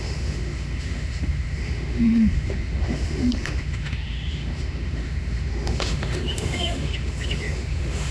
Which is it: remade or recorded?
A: remade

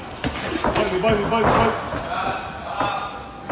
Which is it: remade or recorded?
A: recorded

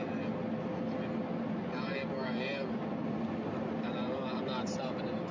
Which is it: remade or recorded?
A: recorded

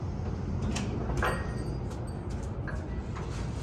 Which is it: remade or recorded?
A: recorded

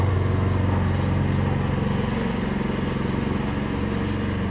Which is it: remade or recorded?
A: recorded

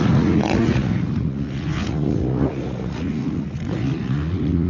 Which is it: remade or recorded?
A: remade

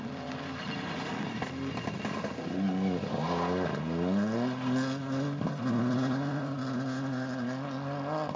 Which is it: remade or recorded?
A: recorded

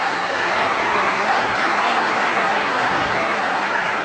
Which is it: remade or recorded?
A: remade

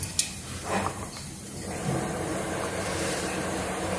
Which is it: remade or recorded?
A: remade